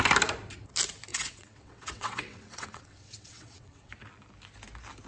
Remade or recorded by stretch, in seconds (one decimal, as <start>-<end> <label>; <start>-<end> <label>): 0.0-1.1 recorded; 1.1-3.9 remade; 3.9-5.1 recorded